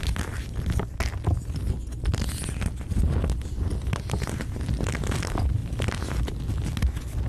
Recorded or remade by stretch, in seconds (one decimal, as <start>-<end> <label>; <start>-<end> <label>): 0.0-7.3 recorded